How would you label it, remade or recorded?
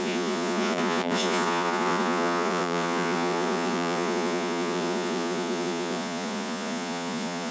remade